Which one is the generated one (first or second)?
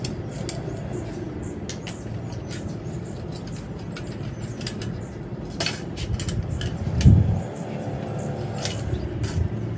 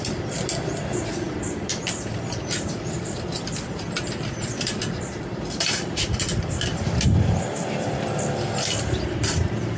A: second